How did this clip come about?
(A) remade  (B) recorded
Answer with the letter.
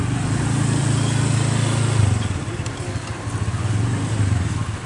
B